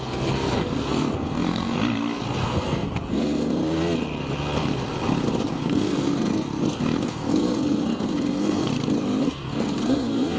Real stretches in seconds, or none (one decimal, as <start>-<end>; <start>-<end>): 1.8-2.4; 3.6-5.5; 8.7-9.2